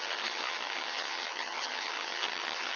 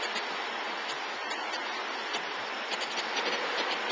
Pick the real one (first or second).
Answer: second